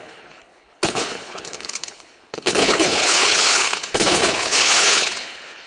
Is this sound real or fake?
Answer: fake